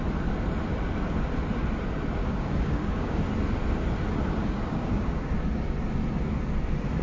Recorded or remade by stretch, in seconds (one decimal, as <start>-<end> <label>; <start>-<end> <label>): 0.0-2.2 recorded; 2.2-3.2 remade; 3.2-4.4 recorded; 4.4-5.3 remade; 5.3-7.0 recorded